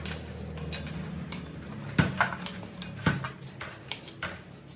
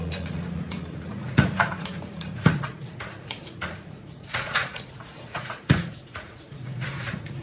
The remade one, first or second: second